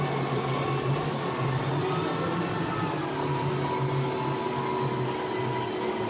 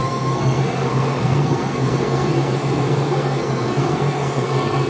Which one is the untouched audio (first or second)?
first